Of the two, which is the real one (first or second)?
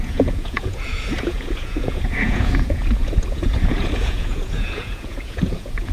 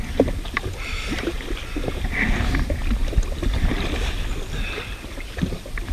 second